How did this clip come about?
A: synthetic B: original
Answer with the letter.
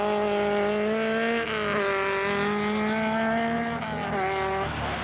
B